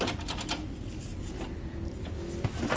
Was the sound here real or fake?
real